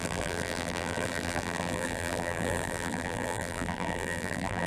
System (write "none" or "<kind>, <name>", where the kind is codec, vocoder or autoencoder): vocoder, BigVGAN v2